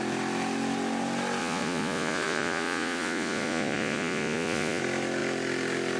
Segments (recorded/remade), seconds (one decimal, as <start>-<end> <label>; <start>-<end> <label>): 0.0-1.4 recorded; 1.4-4.8 remade; 4.8-6.0 recorded

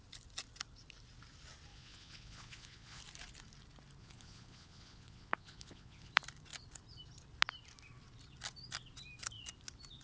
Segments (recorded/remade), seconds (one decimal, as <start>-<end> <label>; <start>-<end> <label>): 0.0-1.7 recorded; 1.7-3.0 remade; 3.0-4.0 recorded; 4.0-6.1 remade; 6.1-10.0 recorded

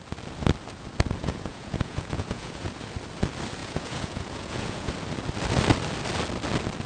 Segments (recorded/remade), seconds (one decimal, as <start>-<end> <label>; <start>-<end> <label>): 0.0-1.2 recorded; 1.2-2.7 remade; 2.7-3.6 recorded; 3.6-4.9 remade; 4.9-6.9 recorded

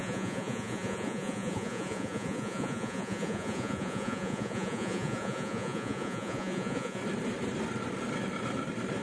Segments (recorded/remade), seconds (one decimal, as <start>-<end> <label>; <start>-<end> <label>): 0.0-7.0 remade; 7.0-9.0 recorded

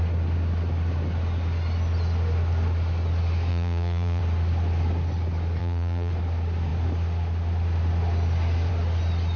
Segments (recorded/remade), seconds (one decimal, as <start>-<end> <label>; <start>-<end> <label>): 0.0-3.5 recorded; 3.5-4.2 remade; 4.2-5.6 recorded; 5.6-6.1 remade; 6.1-9.4 recorded

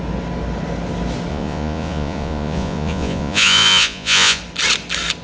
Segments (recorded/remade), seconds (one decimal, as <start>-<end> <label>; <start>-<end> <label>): 0.0-1.3 recorded; 1.3-4.4 remade; 4.4-5.2 recorded

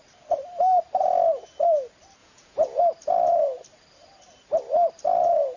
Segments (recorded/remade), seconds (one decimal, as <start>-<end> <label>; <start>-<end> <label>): 0.0-2.2 recorded; 2.2-2.8 remade; 2.8-5.6 recorded